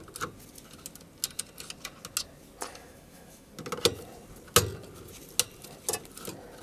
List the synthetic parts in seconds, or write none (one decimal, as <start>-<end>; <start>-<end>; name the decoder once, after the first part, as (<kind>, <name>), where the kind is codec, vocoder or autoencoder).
2.7-3.5 (autoencoder, DAC-VAE)